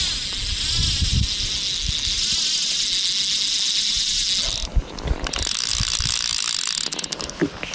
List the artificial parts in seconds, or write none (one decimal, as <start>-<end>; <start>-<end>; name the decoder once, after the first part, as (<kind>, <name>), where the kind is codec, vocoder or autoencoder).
none